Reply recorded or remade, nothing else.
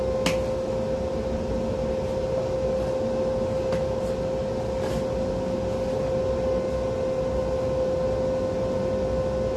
recorded